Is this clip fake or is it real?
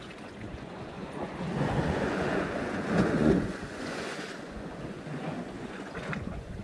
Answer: fake